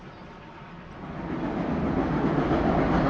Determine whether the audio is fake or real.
real